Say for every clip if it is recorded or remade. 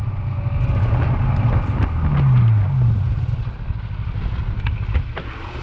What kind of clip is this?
recorded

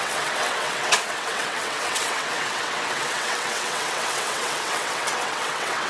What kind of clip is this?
remade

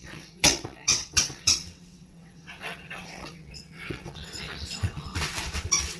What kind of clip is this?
remade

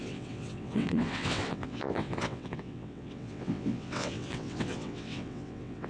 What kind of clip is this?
remade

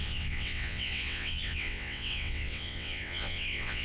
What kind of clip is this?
remade